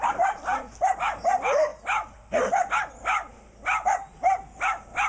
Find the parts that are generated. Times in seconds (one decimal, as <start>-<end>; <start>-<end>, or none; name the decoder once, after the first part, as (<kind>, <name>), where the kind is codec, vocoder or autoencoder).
4.0-5.1 (vocoder, BigVGAN v2)